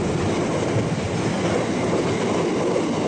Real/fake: real